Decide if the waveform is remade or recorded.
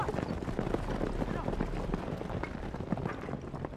recorded